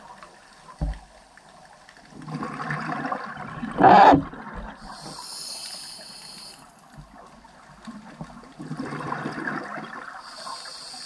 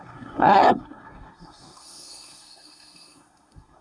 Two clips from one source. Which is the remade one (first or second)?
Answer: second